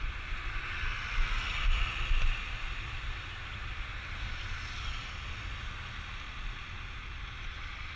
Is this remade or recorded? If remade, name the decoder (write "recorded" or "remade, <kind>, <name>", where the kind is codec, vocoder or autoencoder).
recorded